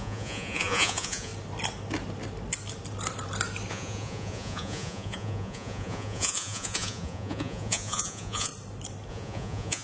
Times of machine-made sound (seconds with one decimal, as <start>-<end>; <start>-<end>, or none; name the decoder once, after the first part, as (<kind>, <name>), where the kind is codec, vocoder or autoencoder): 0.0-1.3 (vocoder, Vocos); 3.7-8.5; 9.1-9.8